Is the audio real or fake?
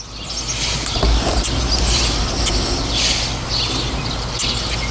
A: real